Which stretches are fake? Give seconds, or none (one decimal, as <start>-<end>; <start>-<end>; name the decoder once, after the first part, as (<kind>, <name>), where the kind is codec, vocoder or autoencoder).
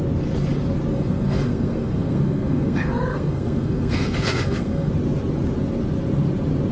0.9-4.9 (codec, SNAC)